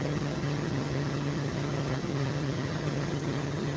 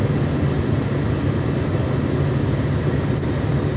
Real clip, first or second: second